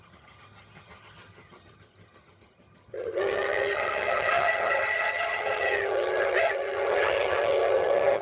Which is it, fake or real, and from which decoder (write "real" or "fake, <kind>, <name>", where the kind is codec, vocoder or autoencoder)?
fake, vocoder, HiFi-GAN